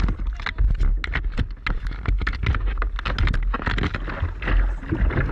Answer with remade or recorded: recorded